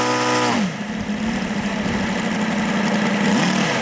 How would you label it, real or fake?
real